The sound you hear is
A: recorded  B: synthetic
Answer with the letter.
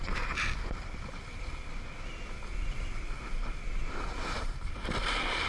A